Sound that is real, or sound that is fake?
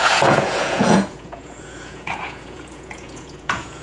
fake